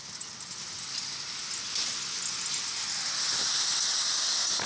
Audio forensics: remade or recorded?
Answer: recorded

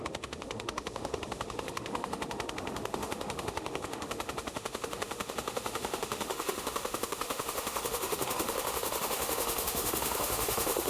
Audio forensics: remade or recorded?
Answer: remade